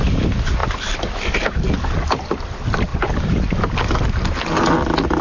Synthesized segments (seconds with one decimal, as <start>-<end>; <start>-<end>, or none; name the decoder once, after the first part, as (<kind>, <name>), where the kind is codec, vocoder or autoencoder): 0.6-1.3 (vocoder, BigVGAN v2); 2.9-3.6